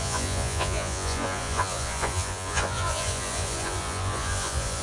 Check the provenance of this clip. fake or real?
fake